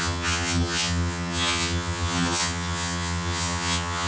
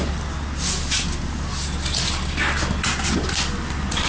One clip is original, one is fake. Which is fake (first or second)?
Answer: first